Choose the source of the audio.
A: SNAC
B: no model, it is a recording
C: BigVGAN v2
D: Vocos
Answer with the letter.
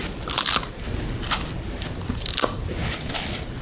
B